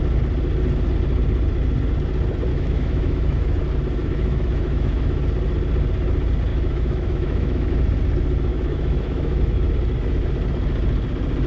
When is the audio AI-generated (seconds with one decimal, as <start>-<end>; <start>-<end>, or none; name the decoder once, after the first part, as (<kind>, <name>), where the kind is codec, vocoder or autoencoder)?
2.5-3.6 (autoencoder, DAC-VAE); 4.0-5.2; 6.5-7.7; 8.5-9.7

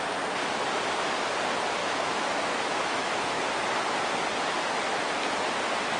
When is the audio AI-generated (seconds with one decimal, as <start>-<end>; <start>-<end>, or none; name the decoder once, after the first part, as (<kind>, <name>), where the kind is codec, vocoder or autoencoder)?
1.8-3.4 (autoencoder, DAC-VAE)